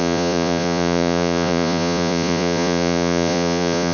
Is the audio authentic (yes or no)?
no